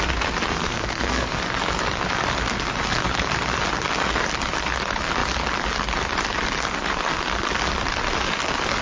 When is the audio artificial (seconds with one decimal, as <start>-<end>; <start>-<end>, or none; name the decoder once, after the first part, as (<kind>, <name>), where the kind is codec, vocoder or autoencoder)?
0.5-1.4 (codec, SNAC)